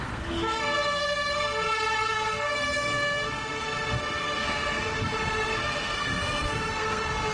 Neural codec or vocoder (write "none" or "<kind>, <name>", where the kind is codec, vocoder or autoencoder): codec, SNAC